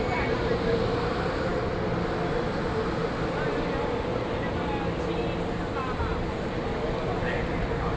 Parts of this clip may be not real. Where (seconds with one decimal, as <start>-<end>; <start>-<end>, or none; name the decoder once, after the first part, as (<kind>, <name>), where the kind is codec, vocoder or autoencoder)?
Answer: none